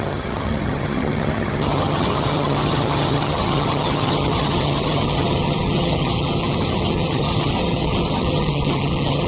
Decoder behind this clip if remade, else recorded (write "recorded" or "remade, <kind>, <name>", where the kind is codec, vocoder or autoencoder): remade, vocoder, HiFi-GAN